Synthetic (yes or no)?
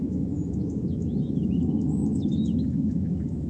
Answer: yes